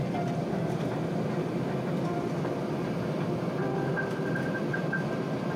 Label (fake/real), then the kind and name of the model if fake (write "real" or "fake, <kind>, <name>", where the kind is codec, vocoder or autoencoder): real